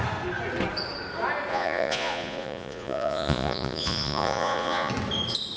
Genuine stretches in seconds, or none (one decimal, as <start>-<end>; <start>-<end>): 0.0-1.5; 4.9-5.6